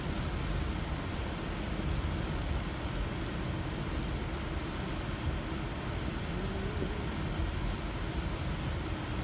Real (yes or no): yes